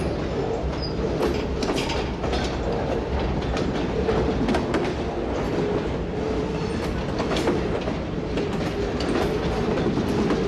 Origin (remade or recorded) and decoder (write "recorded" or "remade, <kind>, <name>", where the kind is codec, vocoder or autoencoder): recorded